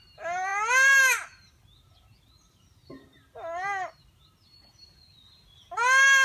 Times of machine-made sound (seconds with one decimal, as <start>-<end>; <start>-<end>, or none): none